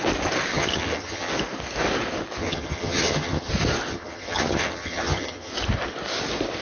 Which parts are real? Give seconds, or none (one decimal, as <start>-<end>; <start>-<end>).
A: 0.0-0.5; 1.3-2.4; 3.5-3.9; 5.5-6.6